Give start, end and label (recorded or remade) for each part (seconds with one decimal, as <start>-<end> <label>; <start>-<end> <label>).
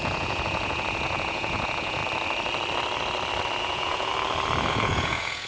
0.0-2.0 remade; 2.0-3.6 recorded; 3.6-4.1 remade; 4.1-4.7 recorded; 4.7-5.5 remade